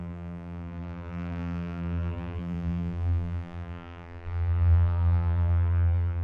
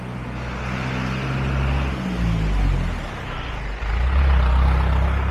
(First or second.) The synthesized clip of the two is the first